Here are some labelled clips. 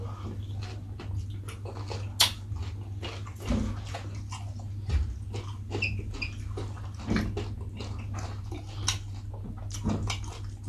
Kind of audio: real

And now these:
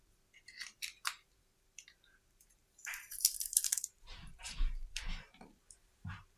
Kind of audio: fake